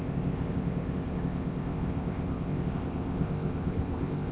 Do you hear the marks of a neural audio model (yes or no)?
yes